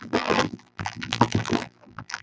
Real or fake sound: fake